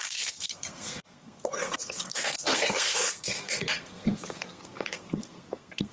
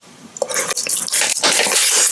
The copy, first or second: first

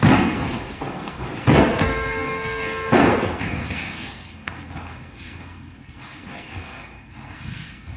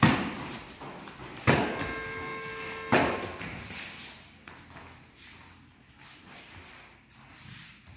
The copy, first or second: first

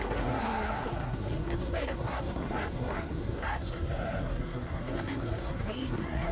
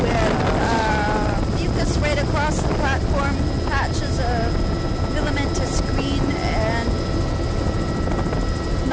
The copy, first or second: first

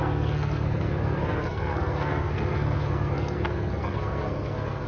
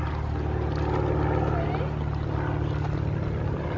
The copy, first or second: first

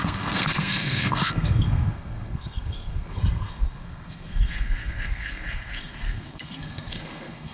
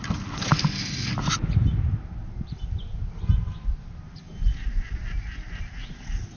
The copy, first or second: first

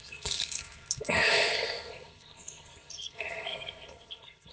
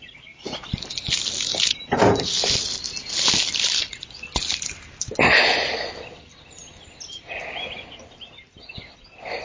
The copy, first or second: first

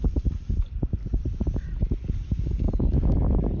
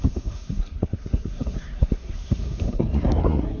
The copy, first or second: second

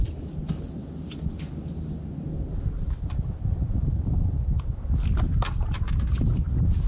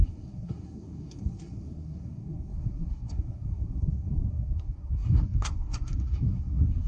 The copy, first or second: second